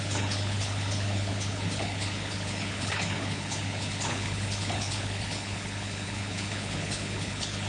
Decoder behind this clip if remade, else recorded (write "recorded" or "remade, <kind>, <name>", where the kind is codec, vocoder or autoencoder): remade, codec, HILCodec